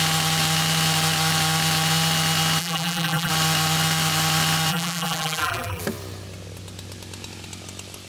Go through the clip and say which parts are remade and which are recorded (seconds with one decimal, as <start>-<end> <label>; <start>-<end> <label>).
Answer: 0.0-2.6 recorded; 2.6-3.3 remade; 3.3-4.7 recorded; 4.7-5.8 remade; 5.8-8.1 recorded